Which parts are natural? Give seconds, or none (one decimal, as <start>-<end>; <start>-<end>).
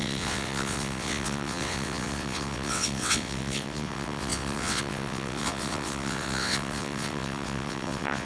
none